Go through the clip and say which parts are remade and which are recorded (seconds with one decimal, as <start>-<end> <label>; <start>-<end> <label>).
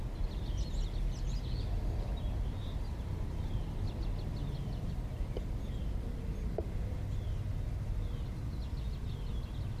0.0-9.8 recorded